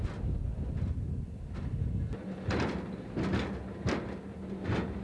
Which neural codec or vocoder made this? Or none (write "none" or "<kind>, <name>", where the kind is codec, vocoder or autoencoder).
none